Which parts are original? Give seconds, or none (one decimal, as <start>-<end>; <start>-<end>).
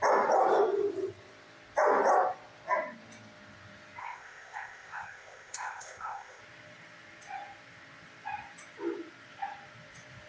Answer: 0.0-4.0; 6.4-10.3